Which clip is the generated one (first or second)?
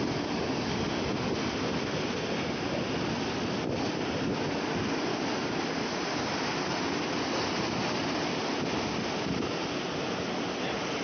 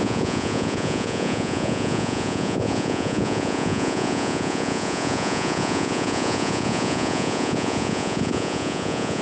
second